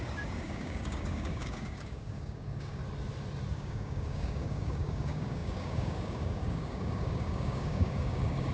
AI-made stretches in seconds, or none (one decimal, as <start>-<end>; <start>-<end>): 0.0-2.8; 3.5-8.5